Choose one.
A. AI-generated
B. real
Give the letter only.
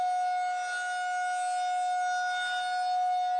B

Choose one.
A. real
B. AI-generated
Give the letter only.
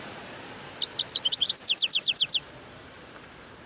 B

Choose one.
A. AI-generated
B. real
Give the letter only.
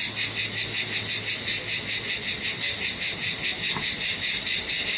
B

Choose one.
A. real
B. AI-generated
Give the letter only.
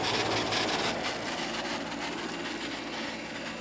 A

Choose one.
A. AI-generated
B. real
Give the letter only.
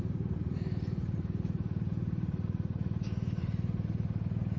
A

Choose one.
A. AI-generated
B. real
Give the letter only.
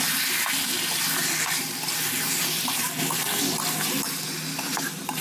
B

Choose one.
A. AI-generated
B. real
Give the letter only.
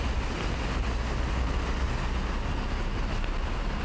B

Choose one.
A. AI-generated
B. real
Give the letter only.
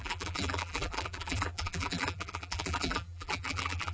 A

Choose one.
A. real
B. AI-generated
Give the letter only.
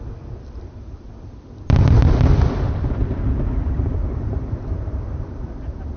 B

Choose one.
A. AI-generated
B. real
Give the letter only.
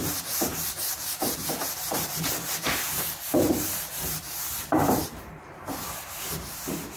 A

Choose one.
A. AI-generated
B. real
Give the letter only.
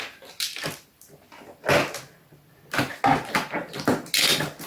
B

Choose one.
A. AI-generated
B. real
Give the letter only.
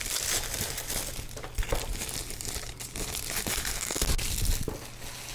B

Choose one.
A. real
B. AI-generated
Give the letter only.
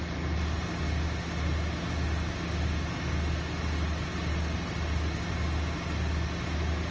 A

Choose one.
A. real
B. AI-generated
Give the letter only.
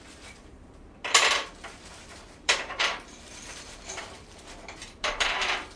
B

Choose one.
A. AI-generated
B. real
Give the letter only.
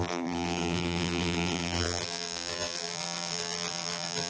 A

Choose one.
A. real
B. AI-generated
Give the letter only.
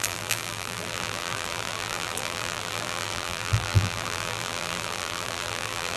B